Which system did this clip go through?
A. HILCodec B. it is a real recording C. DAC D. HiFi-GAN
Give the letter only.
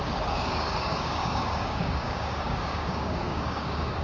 C